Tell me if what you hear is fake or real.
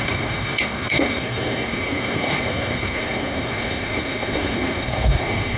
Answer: fake